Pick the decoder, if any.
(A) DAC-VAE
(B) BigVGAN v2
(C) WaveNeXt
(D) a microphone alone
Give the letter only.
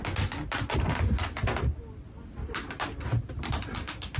D